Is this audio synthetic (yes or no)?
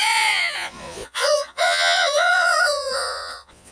yes